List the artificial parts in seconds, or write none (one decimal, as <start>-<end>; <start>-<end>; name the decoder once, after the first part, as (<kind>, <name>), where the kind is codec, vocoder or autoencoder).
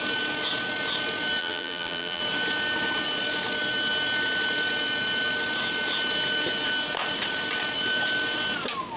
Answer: 1.4-2.2 (vocoder, BigVGAN v2)